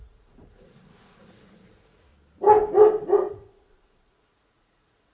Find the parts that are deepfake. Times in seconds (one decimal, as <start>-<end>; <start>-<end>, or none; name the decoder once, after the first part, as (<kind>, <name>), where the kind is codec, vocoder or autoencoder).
0.0-2.1 (vocoder, Vocos); 3.3-5.1